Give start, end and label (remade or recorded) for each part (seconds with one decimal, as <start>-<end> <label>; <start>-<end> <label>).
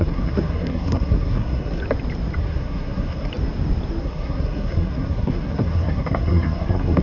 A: 0.0-1.8 remade; 1.8-2.4 recorded; 2.4-3.3 remade; 3.3-4.0 recorded; 4.0-7.0 remade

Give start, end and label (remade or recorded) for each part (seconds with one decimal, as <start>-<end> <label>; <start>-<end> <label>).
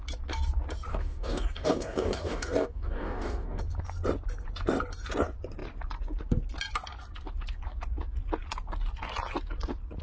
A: 0.0-0.9 recorded; 0.9-3.6 remade; 3.6-10.0 recorded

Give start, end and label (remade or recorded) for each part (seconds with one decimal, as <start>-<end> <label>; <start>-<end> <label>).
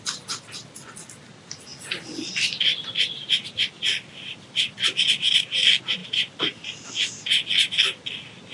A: 0.0-6.0 recorded; 6.0-6.9 remade; 6.9-8.5 recorded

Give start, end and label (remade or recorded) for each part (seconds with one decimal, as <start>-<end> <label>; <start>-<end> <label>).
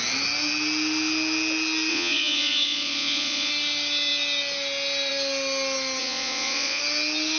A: 0.0-1.9 recorded; 1.9-3.5 remade; 3.5-6.0 recorded; 6.0-6.8 remade; 6.8-7.4 recorded